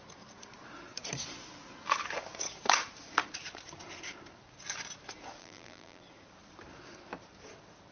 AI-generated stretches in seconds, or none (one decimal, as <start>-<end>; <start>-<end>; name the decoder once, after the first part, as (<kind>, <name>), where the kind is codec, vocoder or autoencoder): 5.4-6.0 (vocoder, BigVGAN v2)